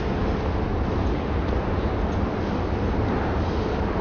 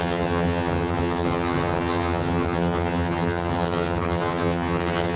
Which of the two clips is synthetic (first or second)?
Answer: second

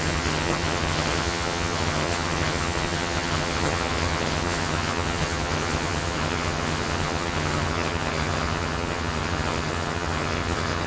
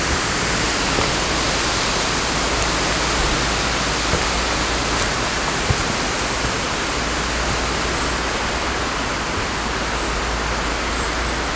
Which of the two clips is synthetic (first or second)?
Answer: first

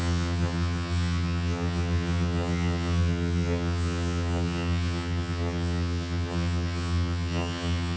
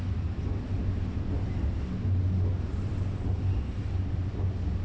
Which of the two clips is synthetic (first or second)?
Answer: first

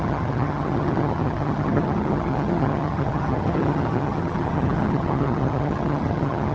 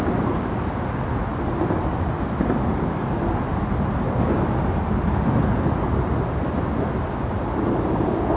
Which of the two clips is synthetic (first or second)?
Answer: first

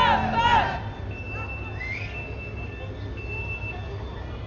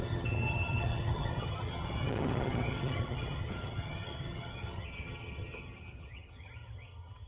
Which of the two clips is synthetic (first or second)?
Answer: second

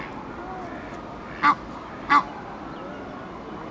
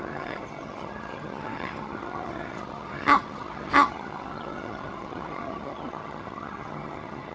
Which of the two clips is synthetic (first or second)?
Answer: second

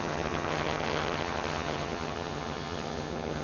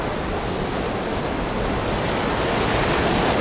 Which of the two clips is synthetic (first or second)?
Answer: first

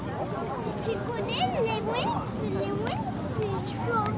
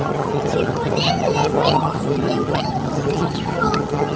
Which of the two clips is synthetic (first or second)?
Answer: second